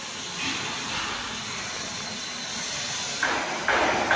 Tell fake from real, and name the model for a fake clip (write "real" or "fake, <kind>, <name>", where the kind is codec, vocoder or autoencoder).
real